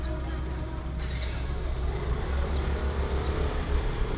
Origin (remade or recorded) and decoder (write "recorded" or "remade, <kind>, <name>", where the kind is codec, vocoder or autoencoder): recorded